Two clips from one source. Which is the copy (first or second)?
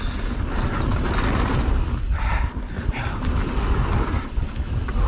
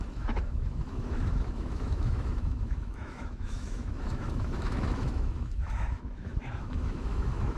second